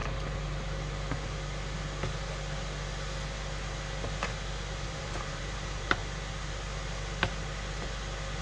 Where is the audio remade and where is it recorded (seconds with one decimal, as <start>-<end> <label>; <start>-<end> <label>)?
0.0-4.8 recorded; 4.8-6.0 remade; 6.0-8.4 recorded